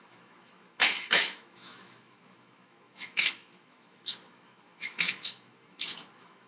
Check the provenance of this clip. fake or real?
fake